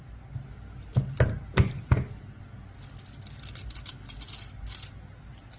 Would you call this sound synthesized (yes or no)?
no